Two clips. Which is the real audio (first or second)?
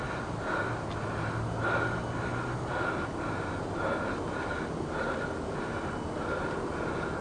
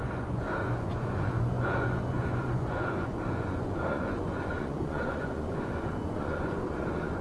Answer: first